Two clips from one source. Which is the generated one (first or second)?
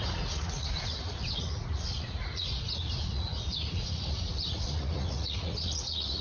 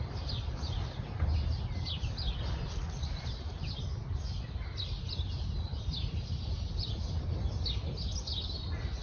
first